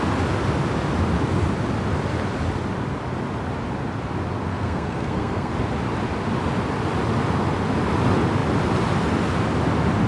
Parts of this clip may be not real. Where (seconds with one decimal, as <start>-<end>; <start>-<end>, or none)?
4.5-5.5

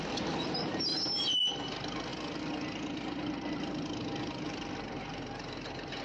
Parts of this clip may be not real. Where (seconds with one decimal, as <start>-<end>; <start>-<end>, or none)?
none

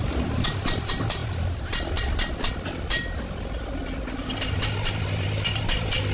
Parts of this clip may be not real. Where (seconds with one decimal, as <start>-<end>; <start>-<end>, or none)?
none